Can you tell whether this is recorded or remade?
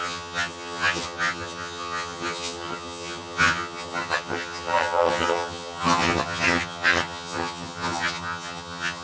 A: remade